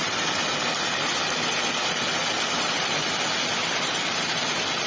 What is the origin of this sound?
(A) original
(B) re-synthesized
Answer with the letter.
A